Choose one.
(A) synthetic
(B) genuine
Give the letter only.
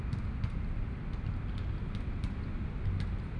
B